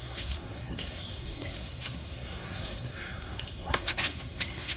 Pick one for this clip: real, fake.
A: fake